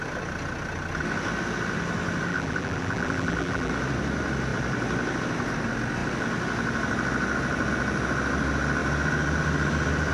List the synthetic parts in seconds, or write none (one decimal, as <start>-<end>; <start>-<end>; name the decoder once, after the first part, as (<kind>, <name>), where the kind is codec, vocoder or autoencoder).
2.3-3.7 (vocoder, BigVGAN v2)